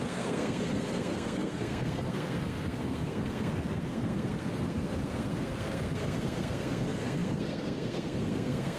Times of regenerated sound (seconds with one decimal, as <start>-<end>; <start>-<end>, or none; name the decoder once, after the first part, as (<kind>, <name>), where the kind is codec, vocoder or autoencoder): 0.0-8.8 (codec, SNAC)